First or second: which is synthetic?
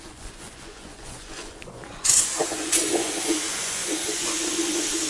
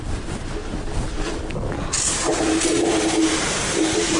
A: first